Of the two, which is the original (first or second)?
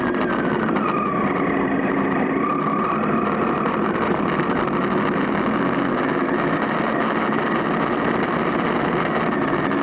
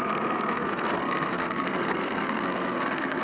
first